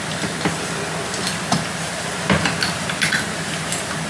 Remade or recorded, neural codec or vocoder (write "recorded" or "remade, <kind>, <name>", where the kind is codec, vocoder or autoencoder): recorded